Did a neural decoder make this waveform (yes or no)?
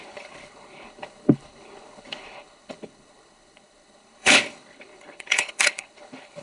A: yes